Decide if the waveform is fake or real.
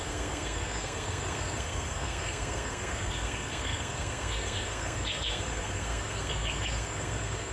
fake